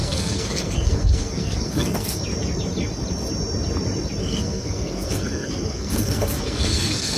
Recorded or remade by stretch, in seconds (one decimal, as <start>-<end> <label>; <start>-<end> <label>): 0.0-2.2 remade; 2.2-4.2 recorded; 4.2-7.2 remade